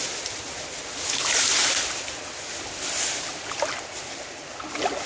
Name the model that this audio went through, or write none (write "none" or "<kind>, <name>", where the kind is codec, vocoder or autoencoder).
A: none